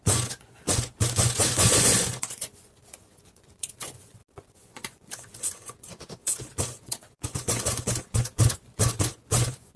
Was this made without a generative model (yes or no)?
no